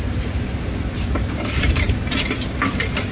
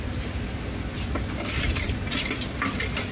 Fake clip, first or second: first